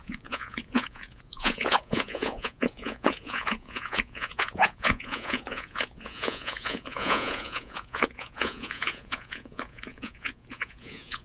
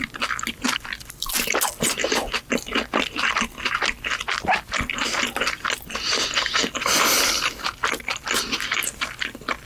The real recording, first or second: second